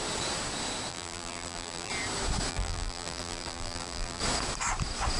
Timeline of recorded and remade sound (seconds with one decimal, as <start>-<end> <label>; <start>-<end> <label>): 0.0-0.9 recorded; 0.9-1.9 remade; 1.9-2.5 recorded; 2.5-4.2 remade; 4.2-5.2 recorded